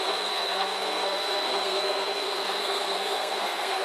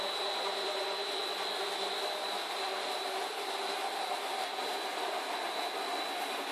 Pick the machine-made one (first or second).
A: first